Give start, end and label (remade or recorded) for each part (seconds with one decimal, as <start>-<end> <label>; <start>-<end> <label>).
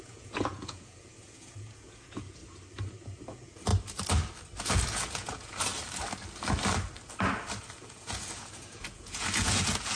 0.0-2.4 remade; 2.4-3.3 recorded; 3.3-3.7 remade; 3.7-4.6 recorded; 4.6-5.7 remade; 5.7-7.7 recorded; 7.7-10.0 remade